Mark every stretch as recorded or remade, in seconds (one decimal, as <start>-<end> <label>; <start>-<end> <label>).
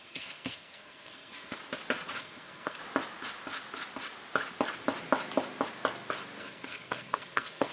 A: 0.0-1.6 remade; 1.6-2.1 recorded; 2.1-2.8 remade; 2.8-6.4 recorded; 6.4-7.7 remade